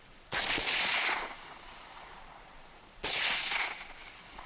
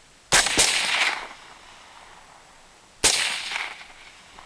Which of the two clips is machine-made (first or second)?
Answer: first